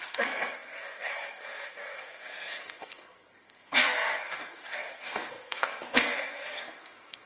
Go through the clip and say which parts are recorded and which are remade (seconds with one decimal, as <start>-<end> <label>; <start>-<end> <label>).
0.0-7.3 remade